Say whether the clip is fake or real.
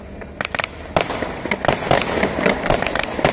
real